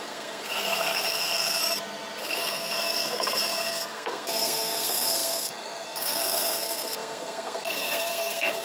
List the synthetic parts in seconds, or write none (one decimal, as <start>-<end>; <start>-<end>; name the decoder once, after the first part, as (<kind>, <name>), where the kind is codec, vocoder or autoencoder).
0.0-1.6 (codec, SNAC); 2.2-8.6